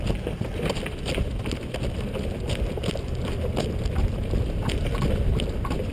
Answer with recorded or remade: recorded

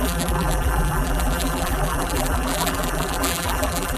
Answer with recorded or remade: remade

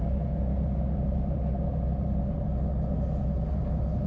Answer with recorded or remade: recorded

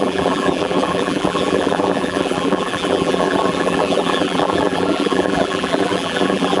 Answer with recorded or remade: remade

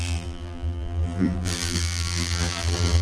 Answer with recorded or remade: remade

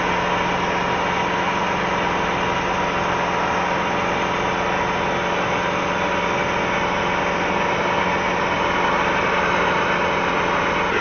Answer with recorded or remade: recorded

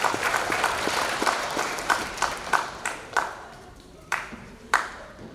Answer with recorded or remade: remade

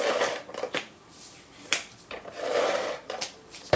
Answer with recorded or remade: remade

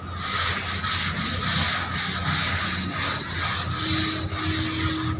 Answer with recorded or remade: recorded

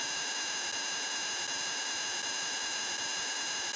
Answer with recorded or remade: recorded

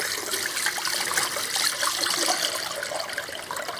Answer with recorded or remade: recorded